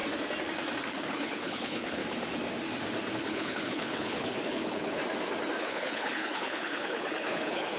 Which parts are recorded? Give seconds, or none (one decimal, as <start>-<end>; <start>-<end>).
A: 0.0-0.8; 2.0-3.1; 5.0-5.6